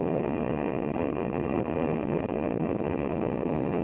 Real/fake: fake